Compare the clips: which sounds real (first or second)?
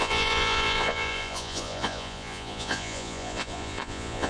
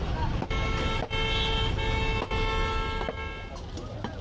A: second